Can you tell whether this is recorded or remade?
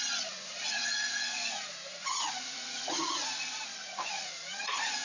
remade